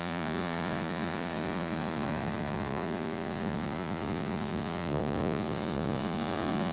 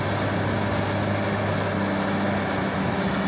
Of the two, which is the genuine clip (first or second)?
second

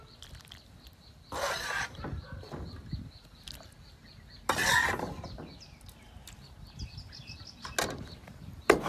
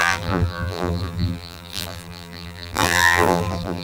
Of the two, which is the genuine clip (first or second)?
first